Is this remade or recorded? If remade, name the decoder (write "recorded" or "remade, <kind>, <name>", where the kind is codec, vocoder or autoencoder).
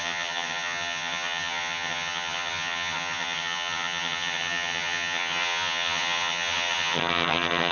remade, vocoder, HiFi-GAN